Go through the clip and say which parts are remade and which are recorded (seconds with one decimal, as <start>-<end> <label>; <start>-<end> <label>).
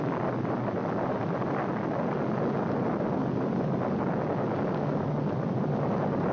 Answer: 0.0-6.3 recorded